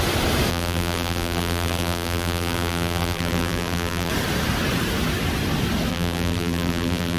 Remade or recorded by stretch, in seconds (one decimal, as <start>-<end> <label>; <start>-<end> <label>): 0.0-0.5 recorded; 0.5-4.1 remade; 4.1-5.9 recorded; 5.9-7.2 remade